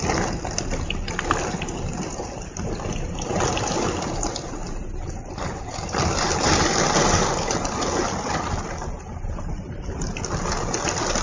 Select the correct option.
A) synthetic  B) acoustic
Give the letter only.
B